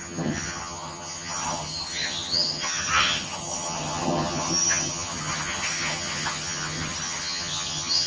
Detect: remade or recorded remade